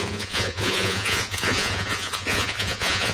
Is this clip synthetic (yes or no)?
yes